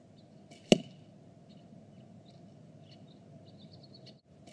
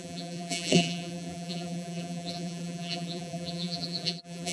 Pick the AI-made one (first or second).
second